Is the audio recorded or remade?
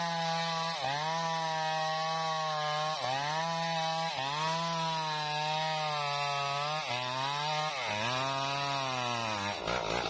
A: recorded